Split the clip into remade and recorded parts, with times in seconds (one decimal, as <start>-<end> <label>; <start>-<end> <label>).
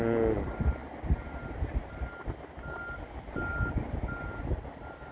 0.0-5.1 recorded